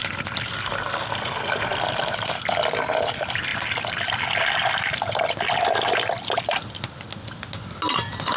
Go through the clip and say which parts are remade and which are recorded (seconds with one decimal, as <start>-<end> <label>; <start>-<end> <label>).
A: 0.0-2.0 remade; 2.0-3.5 recorded; 3.5-4.4 remade; 4.4-8.4 recorded